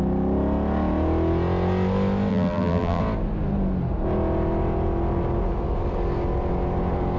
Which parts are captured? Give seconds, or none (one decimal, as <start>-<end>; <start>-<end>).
0.0-2.3; 3.0-7.2